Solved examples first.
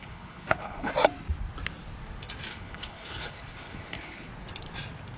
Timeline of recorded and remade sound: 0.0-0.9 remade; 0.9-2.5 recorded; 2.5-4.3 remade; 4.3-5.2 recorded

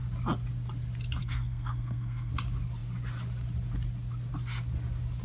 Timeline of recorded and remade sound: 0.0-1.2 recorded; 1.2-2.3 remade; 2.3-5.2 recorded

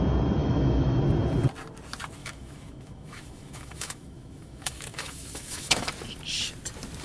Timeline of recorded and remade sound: 0.0-0.4 recorded; 0.4-1.0 remade; 1.0-2.2 recorded; 2.2-5.9 remade; 5.9-7.0 recorded